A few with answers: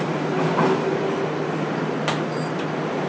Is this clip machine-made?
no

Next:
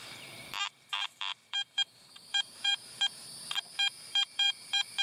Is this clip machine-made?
yes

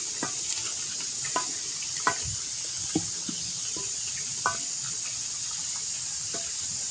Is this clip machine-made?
no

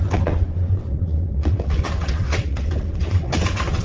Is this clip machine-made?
yes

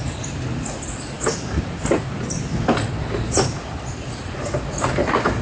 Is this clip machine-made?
no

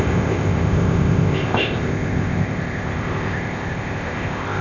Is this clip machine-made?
yes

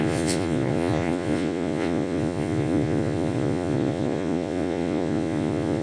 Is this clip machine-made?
yes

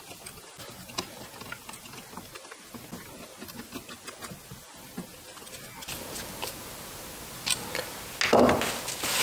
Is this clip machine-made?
no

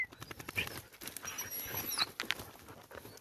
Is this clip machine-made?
no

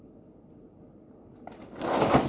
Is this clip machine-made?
no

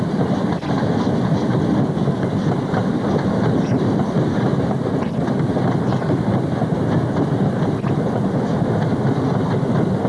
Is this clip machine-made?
no